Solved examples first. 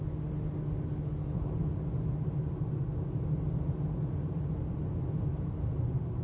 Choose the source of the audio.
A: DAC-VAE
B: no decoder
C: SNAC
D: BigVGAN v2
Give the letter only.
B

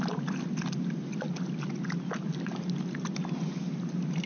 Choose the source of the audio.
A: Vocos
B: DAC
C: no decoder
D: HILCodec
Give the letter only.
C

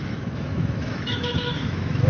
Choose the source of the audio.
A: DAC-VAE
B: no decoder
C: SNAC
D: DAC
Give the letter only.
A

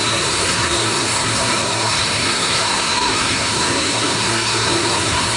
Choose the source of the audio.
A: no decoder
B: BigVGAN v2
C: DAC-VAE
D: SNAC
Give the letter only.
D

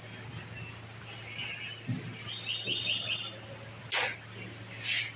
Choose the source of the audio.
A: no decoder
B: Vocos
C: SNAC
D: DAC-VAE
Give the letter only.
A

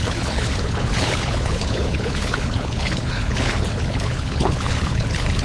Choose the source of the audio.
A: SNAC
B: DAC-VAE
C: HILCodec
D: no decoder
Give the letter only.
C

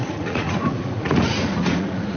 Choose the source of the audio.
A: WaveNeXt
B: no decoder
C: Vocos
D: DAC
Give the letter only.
C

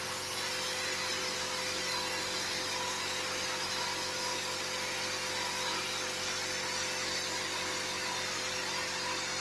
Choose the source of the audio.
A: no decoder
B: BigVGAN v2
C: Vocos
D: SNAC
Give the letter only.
A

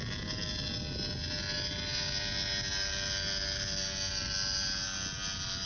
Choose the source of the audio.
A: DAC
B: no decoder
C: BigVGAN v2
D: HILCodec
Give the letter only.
B